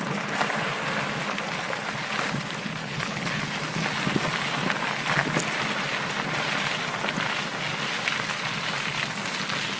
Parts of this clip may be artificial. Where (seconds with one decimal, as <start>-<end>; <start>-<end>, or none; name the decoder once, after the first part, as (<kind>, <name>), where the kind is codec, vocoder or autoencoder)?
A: 2.8-3.4 (codec, HILCodec)